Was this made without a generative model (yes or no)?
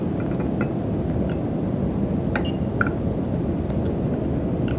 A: yes